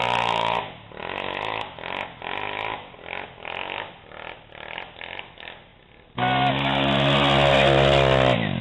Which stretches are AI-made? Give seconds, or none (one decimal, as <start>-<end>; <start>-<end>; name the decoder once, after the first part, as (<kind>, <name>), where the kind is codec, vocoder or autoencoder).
none